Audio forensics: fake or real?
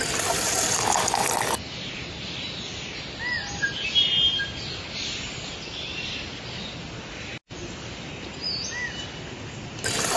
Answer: real